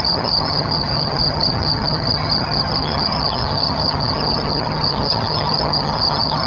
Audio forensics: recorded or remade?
remade